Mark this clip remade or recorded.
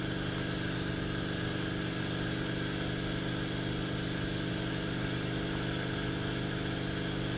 recorded